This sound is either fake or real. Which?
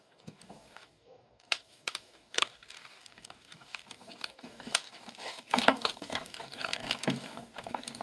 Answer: fake